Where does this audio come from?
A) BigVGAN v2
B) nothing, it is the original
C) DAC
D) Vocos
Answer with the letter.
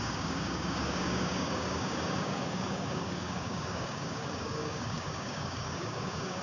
C